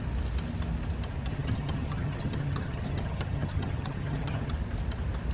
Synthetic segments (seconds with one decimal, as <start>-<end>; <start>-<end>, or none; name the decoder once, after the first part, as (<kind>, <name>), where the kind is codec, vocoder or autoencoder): 1.3-4.5 (vocoder, HiFi-GAN)